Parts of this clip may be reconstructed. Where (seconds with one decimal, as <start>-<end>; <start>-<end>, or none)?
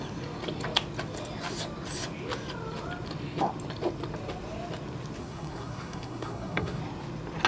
5.2-6.8